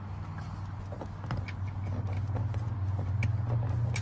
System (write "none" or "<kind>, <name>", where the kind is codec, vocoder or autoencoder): none